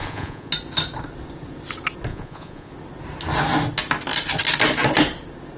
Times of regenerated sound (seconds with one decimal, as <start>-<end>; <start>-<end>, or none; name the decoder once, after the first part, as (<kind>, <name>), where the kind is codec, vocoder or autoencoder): 0.0-0.5 (vocoder, Vocos); 2.1-2.7